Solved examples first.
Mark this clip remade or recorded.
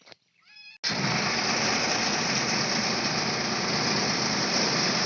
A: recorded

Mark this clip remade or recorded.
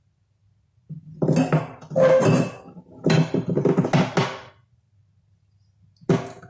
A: recorded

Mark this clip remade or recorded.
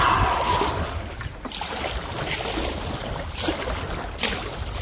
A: recorded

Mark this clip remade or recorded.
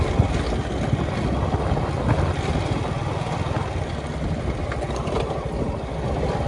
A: recorded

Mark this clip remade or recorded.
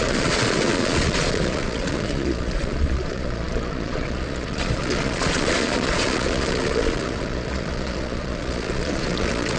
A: remade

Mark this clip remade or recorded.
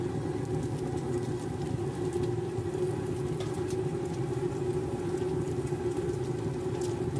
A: recorded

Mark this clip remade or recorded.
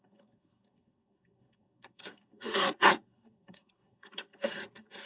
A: remade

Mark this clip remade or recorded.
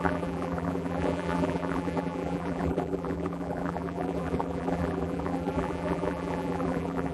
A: remade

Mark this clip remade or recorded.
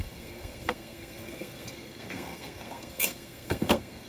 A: remade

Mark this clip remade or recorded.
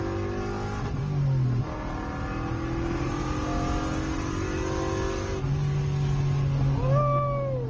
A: recorded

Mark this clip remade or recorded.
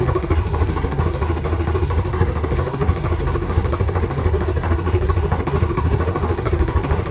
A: remade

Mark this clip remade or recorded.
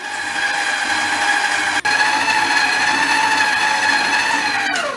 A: recorded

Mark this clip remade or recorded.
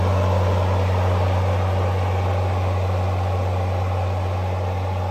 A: recorded